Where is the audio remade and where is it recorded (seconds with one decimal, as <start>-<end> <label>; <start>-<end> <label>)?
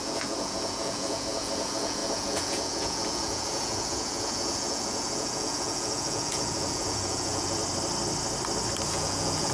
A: 0.0-7.6 remade; 7.6-8.9 recorded; 8.9-9.5 remade